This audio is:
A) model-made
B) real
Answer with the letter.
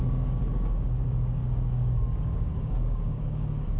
A